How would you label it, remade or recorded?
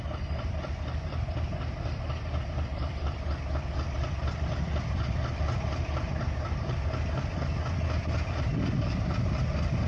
remade